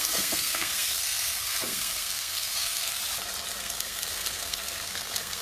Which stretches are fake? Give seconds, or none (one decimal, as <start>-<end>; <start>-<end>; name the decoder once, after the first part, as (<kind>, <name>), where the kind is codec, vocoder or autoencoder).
0.0-3.0 (codec, SNAC); 3.6-5.4